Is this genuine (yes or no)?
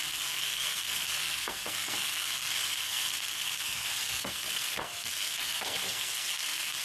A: no